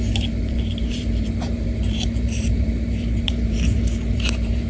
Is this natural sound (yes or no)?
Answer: no